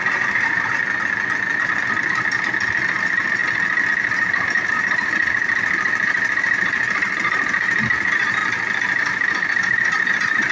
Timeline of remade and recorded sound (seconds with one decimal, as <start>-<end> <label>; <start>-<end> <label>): 0.0-0.8 remade; 0.8-3.0 recorded; 3.0-3.4 remade; 3.4-3.9 recorded; 3.9-8.4 remade; 8.4-9.0 recorded; 9.0-10.5 remade